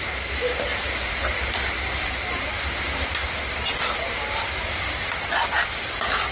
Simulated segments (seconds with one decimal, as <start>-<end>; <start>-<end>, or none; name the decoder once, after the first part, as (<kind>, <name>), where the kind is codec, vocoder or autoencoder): none